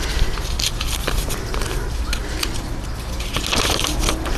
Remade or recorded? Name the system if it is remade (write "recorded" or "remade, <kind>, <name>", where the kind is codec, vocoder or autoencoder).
recorded